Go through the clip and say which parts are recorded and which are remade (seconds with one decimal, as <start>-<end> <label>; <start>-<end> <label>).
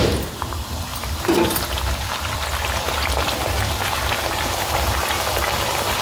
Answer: 0.0-6.0 recorded